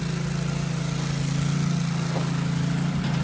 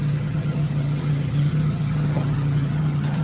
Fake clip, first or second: second